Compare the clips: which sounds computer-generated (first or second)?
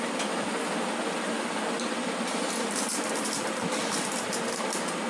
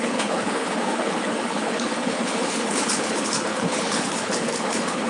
second